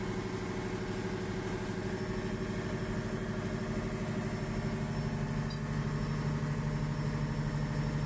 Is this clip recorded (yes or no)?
yes